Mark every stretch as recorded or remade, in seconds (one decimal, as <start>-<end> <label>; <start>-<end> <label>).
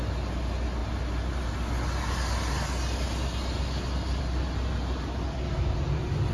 0.0-6.3 recorded